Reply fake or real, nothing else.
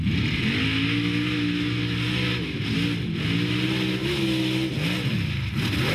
real